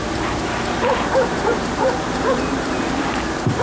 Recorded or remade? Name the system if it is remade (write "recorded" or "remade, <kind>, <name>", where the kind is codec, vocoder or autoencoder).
remade, vocoder, BigVGAN v2